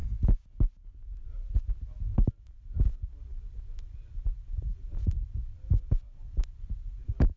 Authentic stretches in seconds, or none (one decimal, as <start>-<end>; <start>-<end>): 0.0-2.3